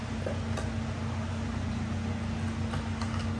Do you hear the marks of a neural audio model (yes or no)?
no